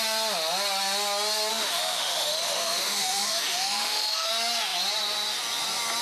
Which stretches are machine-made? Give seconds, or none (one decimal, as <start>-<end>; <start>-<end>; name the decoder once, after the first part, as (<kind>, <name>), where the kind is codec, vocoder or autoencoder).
1.5-4.3 (autoencoder, DAC-VAE)